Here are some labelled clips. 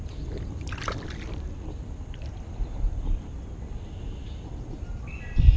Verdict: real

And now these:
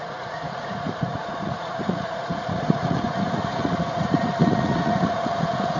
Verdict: fake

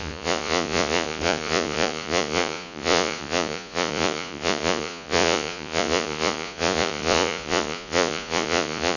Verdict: fake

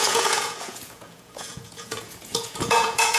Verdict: fake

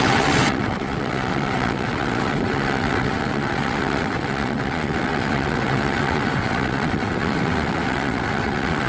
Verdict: fake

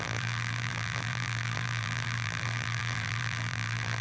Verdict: fake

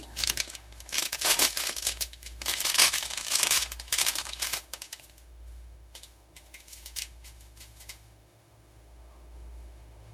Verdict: fake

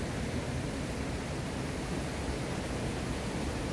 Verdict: real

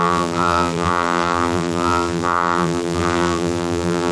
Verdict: fake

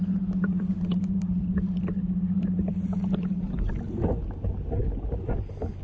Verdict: real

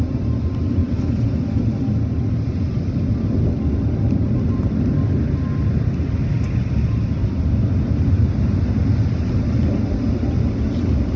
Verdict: real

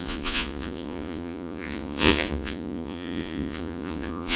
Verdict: fake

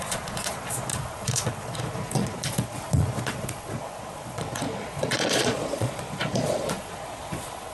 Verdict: fake